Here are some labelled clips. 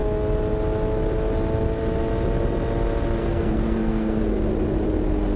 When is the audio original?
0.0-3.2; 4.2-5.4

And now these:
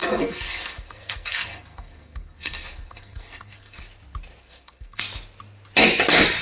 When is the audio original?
3.8-4.4; 5.0-6.4